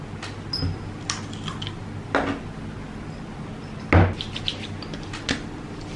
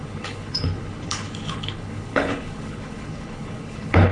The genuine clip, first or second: first